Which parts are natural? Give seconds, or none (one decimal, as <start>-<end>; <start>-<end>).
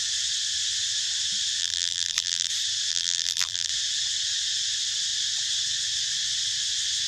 0.0-1.6; 2.5-2.9; 3.7-7.1